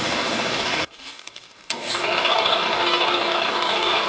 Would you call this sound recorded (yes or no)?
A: no